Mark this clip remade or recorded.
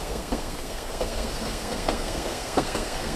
remade